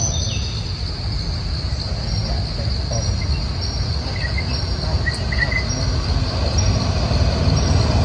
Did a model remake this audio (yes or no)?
no